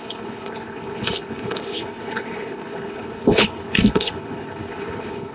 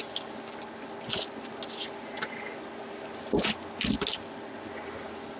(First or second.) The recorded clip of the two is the second